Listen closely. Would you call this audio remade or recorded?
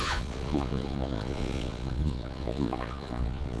remade